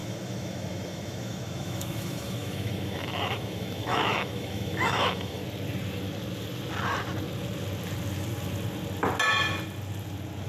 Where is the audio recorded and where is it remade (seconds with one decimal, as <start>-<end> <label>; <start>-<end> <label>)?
0.0-5.4 remade; 5.4-10.5 recorded